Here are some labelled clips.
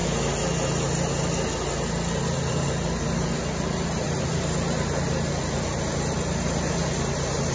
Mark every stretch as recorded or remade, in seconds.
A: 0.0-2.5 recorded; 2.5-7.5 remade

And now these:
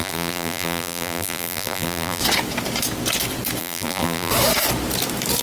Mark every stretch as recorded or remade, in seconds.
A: 0.0-2.2 remade; 2.2-3.6 recorded; 3.6-4.3 remade; 4.3-5.4 recorded